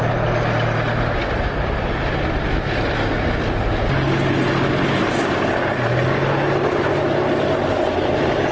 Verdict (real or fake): real